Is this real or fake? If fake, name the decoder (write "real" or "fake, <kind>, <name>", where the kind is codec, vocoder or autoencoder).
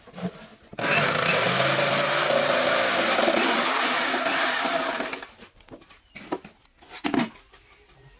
real